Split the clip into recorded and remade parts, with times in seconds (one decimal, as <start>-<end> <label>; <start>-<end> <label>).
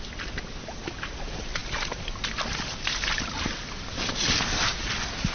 0.0-5.3 recorded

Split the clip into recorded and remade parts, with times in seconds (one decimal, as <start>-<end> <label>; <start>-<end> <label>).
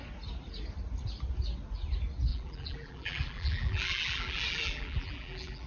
0.0-2.3 recorded; 2.3-5.7 remade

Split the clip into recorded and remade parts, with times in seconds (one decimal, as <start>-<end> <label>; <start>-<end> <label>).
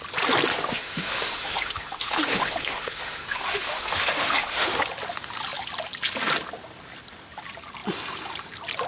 0.0-0.5 recorded; 0.5-4.8 remade; 4.8-8.9 recorded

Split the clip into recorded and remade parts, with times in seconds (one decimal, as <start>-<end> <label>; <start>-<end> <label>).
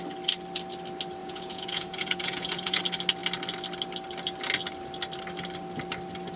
0.0-1.2 recorded; 1.2-2.8 remade; 2.8-6.4 recorded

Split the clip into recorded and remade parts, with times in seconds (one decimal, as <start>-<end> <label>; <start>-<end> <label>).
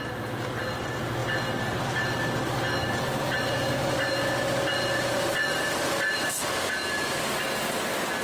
0.0-8.2 recorded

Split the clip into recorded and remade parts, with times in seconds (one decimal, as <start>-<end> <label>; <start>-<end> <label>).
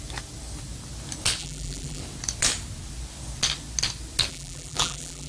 0.0-1.4 recorded; 1.4-2.0 remade; 2.0-4.3 recorded; 4.3-5.3 remade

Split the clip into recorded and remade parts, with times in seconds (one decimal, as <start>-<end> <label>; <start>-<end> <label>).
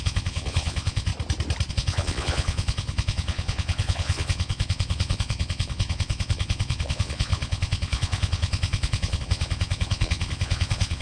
0.0-1.1 remade; 1.1-1.7 recorded; 1.7-11.0 remade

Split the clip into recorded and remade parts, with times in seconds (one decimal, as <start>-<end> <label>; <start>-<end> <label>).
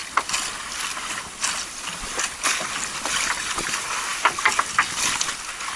0.0-2.7 remade; 2.7-5.8 recorded